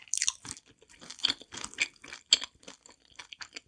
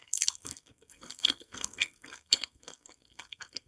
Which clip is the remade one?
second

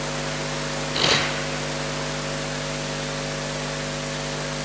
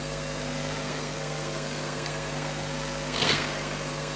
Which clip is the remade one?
second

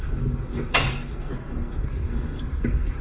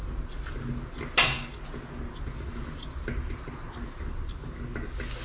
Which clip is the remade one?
first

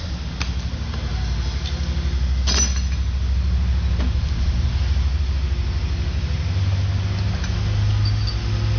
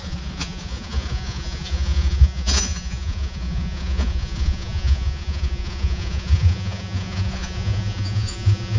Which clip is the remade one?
second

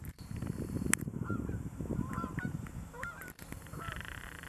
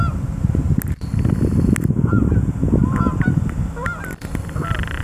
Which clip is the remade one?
first